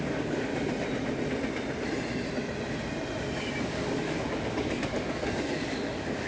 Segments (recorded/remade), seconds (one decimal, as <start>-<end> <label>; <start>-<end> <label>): 0.0-0.5 remade; 0.5-3.4 recorded; 3.4-6.3 remade